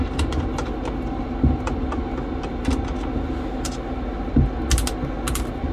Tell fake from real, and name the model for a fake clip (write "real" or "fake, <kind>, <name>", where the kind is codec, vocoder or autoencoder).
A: real